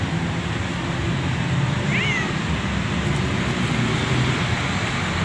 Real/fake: real